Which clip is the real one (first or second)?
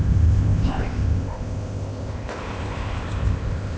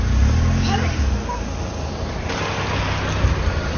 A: second